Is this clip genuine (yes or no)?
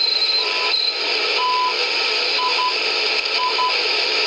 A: yes